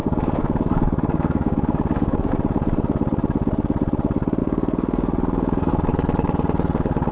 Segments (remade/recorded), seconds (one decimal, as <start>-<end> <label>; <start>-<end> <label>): 0.0-2.3 remade; 2.3-4.4 recorded; 4.4-5.7 remade; 5.7-7.1 recorded